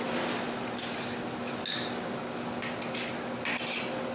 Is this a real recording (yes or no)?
yes